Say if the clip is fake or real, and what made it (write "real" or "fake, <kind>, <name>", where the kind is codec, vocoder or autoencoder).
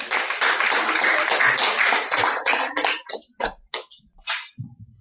real